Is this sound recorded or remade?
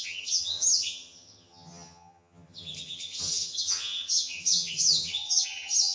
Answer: remade